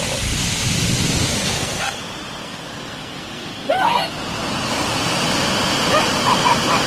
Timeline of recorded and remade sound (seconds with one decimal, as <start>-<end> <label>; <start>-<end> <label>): 0.0-1.3 recorded; 1.3-2.0 remade; 2.0-2.4 recorded; 2.4-4.1 remade; 4.1-6.9 recorded